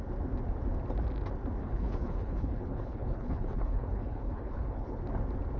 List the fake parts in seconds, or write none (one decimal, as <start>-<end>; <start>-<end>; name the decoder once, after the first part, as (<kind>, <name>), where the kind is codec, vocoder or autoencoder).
1.6-5.0 (codec, HILCodec)